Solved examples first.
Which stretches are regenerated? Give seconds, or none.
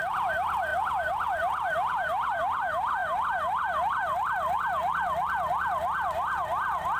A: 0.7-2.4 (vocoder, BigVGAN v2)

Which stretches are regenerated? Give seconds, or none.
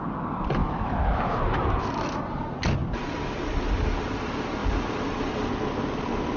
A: 0.6-2.2 (autoencoder, DAC-VAE)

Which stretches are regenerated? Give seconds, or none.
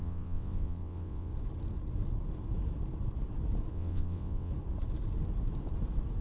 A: 0.0-1.3 (vocoder, WaveNeXt); 3.7-4.5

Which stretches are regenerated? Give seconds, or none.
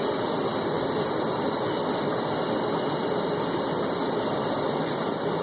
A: none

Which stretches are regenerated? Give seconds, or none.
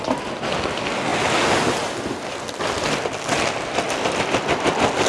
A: none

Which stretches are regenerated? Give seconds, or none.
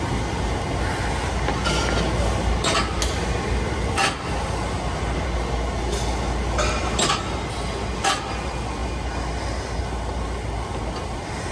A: none